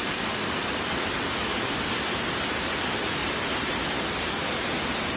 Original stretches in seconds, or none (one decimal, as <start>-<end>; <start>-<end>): 0.0-1.5; 2.1-3.2; 4.1-5.2